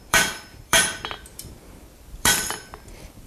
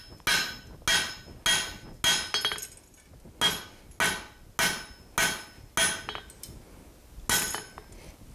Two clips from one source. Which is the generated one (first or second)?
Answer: first